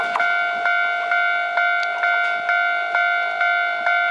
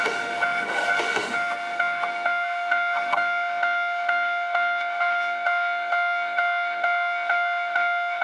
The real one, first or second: first